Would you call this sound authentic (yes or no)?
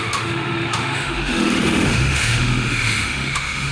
no